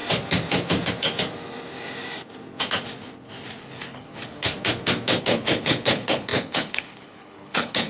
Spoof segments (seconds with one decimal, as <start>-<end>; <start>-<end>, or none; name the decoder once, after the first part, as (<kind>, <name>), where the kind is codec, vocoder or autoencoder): 3.6-4.5 (codec, HILCodec); 5.2-7.9